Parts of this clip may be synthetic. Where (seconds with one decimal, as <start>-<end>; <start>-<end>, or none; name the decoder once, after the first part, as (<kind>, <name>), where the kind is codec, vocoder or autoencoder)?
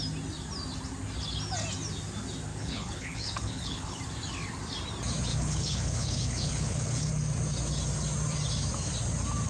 2.5-4.0 (codec, HILCodec); 5.3-7.1